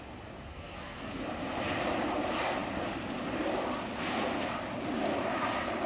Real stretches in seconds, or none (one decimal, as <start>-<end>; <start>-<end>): 0.0-0.5; 1.1-5.9

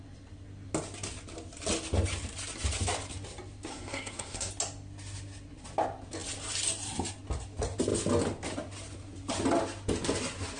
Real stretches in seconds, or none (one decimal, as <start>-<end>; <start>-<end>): 0.0-3.7; 4.5-10.6

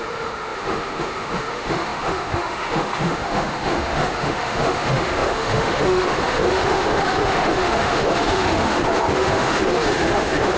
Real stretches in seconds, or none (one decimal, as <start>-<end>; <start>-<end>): none

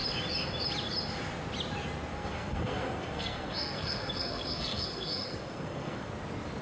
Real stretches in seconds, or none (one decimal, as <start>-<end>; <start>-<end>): 0.0-2.1; 6.1-6.6

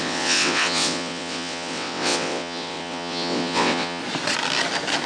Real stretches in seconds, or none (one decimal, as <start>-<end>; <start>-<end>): 4.0-5.1

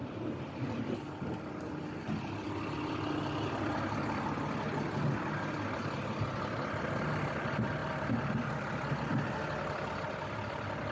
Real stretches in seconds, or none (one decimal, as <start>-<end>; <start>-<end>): 0.0-10.9

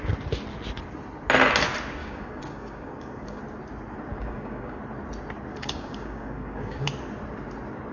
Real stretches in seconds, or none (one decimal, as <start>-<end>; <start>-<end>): 0.0-2.0; 3.4-4.1; 4.8-5.5; 6.9-7.9